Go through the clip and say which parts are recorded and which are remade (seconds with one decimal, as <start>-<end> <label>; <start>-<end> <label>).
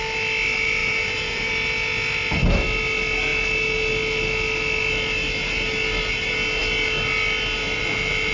0.0-0.8 recorded; 0.8-1.5 remade; 1.5-8.3 recorded